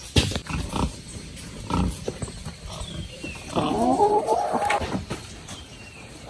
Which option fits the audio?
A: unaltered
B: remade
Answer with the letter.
B